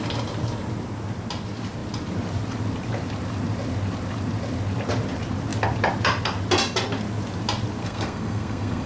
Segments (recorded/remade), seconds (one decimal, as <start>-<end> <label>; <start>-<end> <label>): 0.0-7.8 recorded; 7.8-8.9 remade

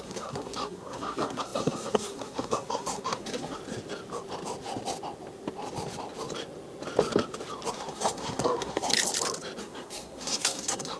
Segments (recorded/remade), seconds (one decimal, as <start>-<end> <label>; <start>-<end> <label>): 0.0-3.6 remade; 3.6-7.7 recorded; 7.7-8.9 remade; 8.9-9.6 recorded; 9.6-11.0 remade